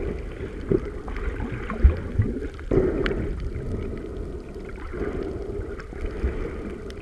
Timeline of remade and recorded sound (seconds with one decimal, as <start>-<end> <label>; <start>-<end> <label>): 0.0-7.0 recorded